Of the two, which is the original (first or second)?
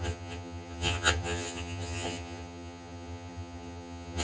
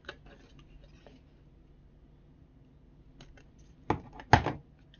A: second